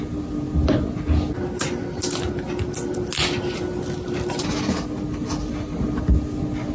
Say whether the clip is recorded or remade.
recorded